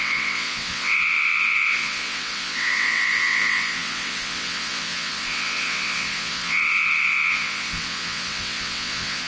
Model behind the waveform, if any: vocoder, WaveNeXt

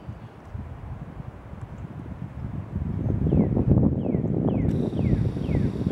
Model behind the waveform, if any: none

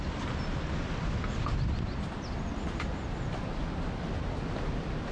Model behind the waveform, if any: none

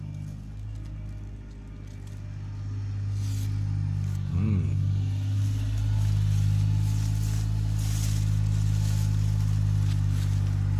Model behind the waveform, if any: none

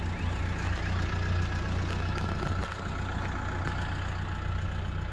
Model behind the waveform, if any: none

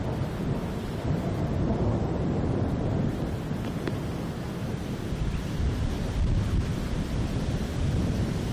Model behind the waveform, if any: none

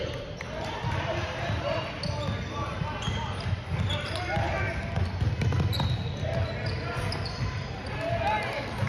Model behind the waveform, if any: none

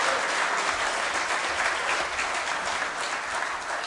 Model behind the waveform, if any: none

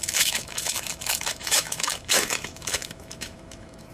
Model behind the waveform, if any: autoencoder, DAC-VAE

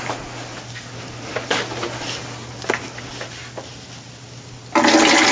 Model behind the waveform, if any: none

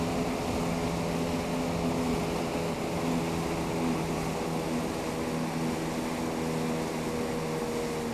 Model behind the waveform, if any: none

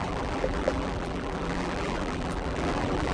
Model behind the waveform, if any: vocoder, BigVGAN v2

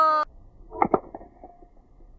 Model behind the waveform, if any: none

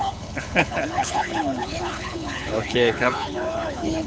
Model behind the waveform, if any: codec, HILCodec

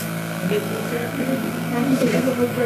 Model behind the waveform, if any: codec, SNAC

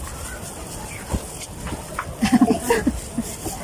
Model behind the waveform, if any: none